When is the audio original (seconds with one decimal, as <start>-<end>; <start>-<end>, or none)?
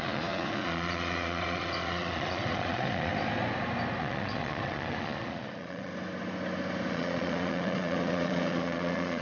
3.1-4.0; 5.9-6.9